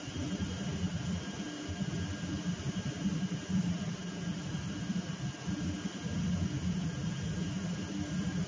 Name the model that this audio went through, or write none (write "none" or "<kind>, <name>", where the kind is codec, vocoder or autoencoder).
none